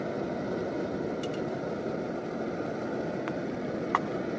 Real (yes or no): yes